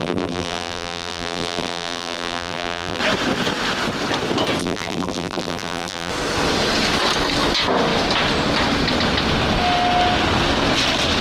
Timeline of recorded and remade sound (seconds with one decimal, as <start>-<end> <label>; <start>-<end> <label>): 0.0-3.0 remade; 3.0-4.6 recorded; 4.6-6.1 remade; 6.1-11.2 recorded